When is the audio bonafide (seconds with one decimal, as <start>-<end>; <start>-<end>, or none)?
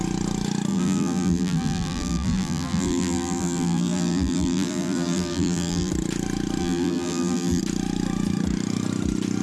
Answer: 0.0-0.7; 5.9-6.6; 7.6-9.4